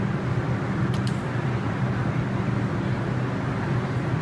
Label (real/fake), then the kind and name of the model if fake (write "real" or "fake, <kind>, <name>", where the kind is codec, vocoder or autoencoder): real